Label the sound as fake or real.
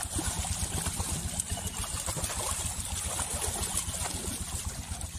real